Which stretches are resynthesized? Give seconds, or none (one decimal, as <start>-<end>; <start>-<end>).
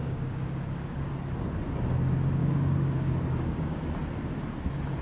0.0-1.1; 2.4-3.9